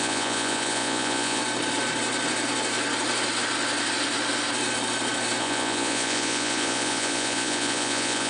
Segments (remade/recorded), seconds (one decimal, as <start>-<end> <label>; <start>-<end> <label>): 0.0-1.4 remade; 1.4-5.4 recorded; 5.4-8.3 remade